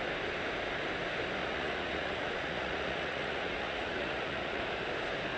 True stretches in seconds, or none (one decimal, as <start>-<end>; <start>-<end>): 0.0-1.4; 4.6-5.4